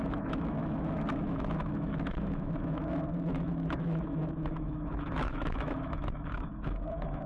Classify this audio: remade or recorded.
remade